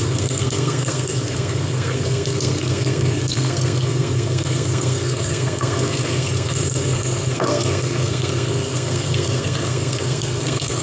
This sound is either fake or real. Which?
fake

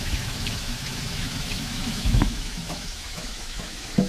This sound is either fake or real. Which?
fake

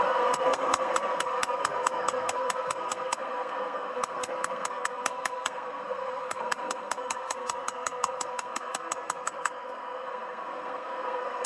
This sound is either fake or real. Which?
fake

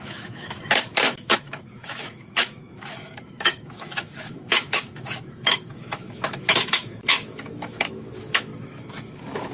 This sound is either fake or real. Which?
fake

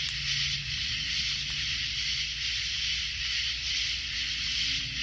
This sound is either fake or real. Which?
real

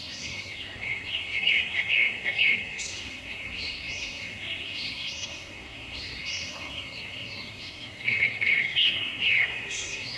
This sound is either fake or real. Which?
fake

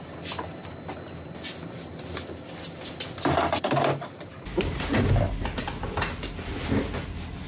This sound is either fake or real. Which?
real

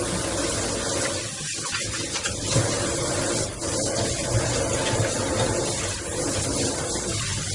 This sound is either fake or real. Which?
real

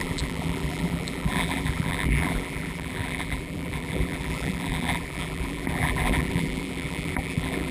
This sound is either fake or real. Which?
fake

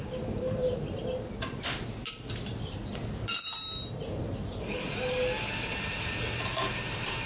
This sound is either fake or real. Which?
fake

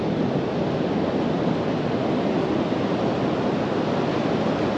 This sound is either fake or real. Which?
real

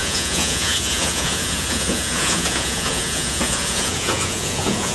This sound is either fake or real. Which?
fake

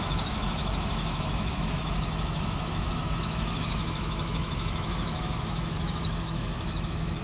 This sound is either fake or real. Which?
fake